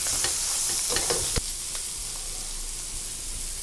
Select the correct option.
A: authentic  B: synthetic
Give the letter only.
A